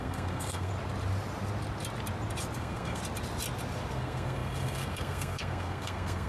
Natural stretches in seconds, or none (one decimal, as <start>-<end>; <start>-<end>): 0.7-2.6; 3.0-3.9